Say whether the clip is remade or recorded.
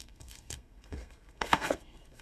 remade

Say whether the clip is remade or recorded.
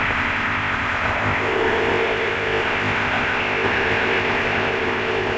remade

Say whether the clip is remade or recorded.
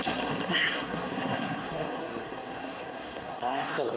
remade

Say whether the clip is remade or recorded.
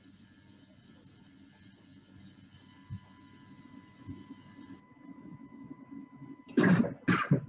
recorded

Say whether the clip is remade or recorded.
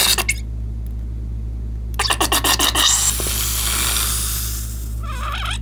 recorded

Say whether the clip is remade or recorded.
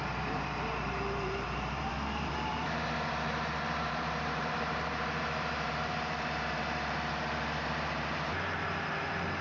remade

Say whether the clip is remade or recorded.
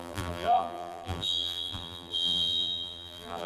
remade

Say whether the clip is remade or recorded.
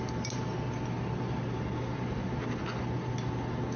recorded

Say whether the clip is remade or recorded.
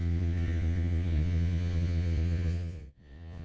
remade